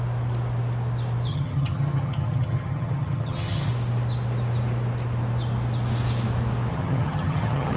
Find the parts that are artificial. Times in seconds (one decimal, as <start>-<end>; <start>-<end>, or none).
1.3-3.7; 6.7-7.8